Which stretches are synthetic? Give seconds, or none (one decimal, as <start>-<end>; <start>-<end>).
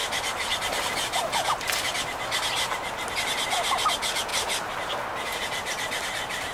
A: 4.3-4.9